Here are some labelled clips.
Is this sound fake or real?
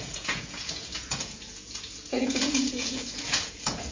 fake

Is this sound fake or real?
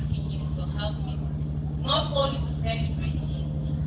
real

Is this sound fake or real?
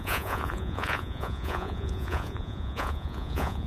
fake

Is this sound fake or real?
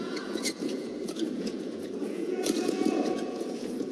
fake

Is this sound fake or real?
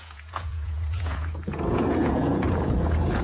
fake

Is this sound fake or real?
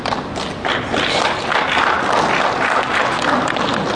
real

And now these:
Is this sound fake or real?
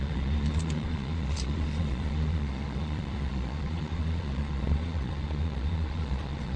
fake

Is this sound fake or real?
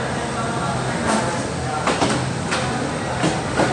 real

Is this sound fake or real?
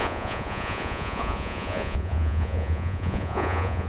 fake